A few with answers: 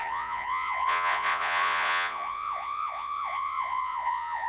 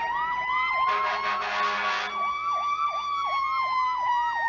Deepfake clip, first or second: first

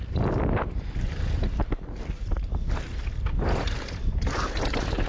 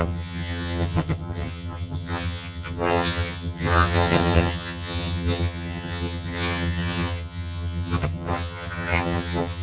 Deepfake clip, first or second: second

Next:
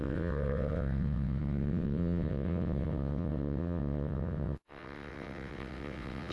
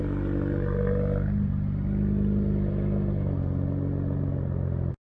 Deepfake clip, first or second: first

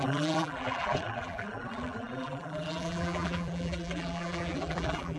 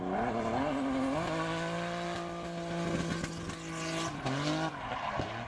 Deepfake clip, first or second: first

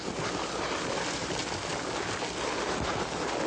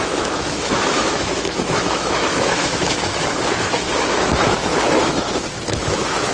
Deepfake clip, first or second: second